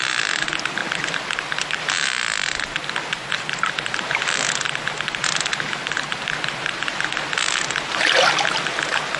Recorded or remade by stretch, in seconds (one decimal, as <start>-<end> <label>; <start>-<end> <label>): 0.0-9.2 recorded

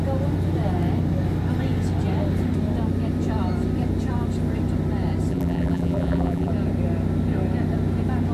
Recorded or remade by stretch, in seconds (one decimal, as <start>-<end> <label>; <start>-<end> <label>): 0.0-5.3 recorded; 5.3-6.5 remade; 6.5-8.3 recorded